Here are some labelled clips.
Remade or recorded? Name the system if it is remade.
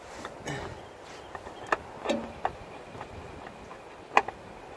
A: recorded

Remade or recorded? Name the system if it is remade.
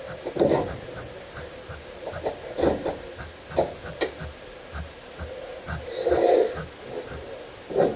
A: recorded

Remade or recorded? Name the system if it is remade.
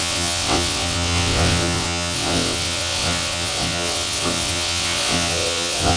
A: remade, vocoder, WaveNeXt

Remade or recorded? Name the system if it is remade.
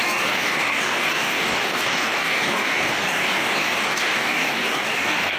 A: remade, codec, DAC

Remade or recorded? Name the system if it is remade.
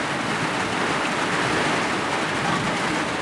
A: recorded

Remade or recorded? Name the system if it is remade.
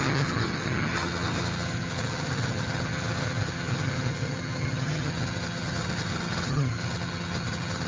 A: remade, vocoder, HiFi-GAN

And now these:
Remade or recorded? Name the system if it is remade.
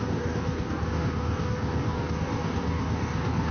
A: remade, codec, DAC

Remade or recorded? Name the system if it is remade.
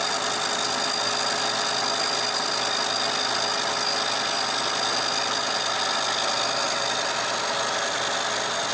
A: recorded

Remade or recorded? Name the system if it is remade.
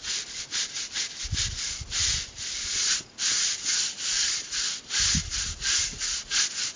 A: recorded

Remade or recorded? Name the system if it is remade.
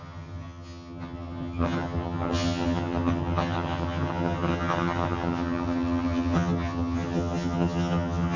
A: remade, vocoder, HiFi-GAN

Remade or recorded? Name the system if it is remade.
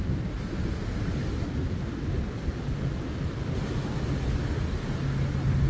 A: recorded